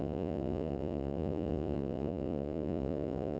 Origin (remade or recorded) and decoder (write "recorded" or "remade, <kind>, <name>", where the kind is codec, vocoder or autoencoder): remade, vocoder, Vocos